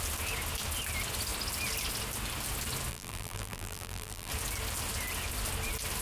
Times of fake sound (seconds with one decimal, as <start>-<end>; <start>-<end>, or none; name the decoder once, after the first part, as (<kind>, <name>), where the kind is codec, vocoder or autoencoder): 2.9-4.3 (vocoder, BigVGAN v2)